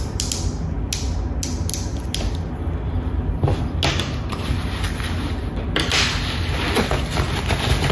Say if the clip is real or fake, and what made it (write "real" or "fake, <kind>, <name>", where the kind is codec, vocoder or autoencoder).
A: real